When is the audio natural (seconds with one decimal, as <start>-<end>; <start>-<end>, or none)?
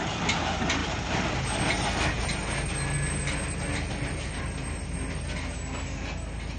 0.0-0.8; 1.9-6.6